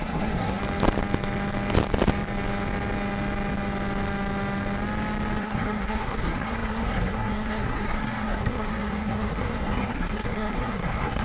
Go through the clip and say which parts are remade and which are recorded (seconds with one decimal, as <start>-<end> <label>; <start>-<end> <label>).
0.0-0.6 remade; 0.6-5.4 recorded; 5.4-11.2 remade